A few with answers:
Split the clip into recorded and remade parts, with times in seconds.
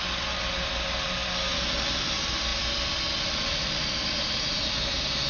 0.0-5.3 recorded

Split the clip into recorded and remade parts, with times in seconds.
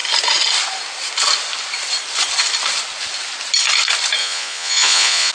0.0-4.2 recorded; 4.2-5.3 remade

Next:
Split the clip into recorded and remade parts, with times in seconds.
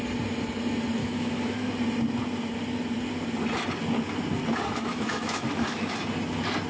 0.0-1.0 recorded; 1.0-1.7 remade; 1.7-4.9 recorded; 4.9-6.0 remade; 6.0-6.7 recorded